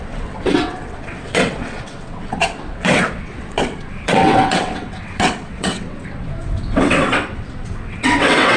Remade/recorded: remade